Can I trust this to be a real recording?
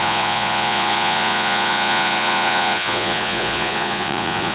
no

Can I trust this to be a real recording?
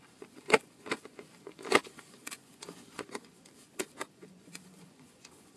no